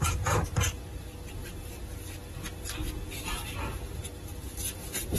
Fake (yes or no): no